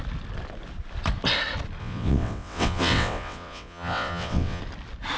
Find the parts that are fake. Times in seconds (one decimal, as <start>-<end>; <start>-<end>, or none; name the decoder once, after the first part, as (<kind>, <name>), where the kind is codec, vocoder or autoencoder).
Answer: 1.8-4.6 (vocoder, WaveNeXt)